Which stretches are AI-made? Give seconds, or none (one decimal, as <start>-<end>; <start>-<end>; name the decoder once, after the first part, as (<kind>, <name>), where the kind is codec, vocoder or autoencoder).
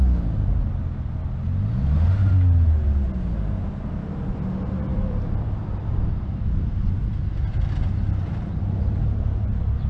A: 4.9-6.9 (vocoder, BigVGAN v2)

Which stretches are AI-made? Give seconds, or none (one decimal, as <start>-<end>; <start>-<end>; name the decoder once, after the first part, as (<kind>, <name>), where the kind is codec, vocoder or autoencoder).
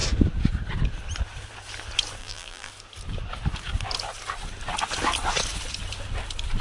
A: 2.2-2.7 (vocoder, BigVGAN v2)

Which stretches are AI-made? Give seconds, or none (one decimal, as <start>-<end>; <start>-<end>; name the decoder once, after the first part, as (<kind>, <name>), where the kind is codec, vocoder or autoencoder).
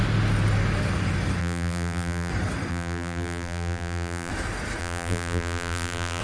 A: 1.4-2.3 (vocoder, BigVGAN v2); 2.7-4.3; 4.8-6.2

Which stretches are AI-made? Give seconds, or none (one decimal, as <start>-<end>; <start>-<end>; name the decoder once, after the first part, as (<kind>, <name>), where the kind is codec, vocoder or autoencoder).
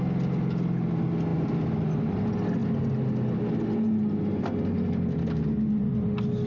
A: 1.3-2.2 (vocoder, BigVGAN v2)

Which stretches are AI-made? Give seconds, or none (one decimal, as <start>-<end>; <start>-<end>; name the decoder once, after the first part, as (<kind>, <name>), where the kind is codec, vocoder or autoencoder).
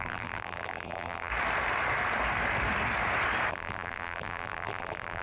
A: 0.0-1.3 (vocoder, BigVGAN v2); 3.5-5.2